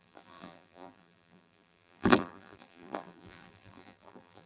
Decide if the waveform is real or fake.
fake